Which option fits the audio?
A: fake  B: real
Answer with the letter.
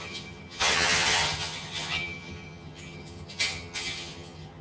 A